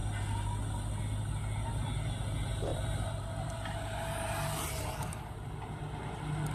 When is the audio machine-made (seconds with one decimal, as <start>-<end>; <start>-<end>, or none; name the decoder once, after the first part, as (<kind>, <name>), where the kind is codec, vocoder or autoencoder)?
2.7-5.8 (vocoder, BigVGAN v2)